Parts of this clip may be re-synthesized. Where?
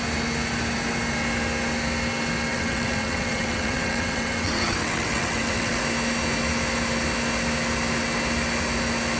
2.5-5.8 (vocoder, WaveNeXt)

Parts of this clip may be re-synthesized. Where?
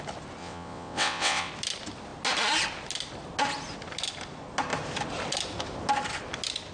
0.4-1.5 (vocoder, WaveNeXt)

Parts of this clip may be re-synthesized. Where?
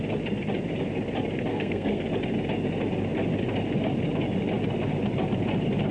1.5-2.0 (codec, SNAC)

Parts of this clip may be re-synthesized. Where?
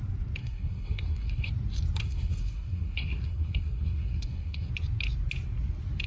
0.4-1.5 (codec, SNAC); 2.0-4.7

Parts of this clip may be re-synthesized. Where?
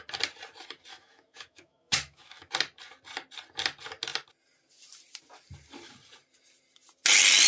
0.9-2.5 (autoencoder, DAC-VAE)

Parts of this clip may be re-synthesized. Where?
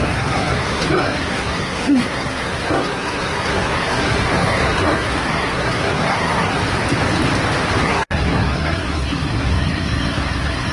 0.0-6.6 (codec, SNAC); 7.8-10.7